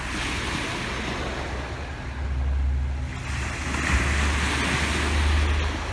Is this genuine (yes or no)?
yes